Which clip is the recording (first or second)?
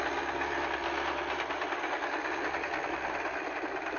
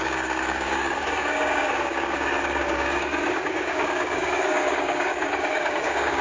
first